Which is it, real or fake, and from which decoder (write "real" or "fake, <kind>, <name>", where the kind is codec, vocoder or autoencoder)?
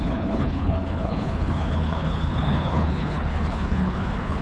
fake, codec, HILCodec